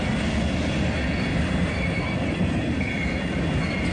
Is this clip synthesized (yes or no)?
no